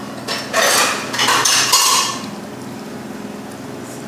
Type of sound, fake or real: real